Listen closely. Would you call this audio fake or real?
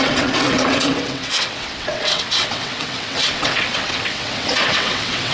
fake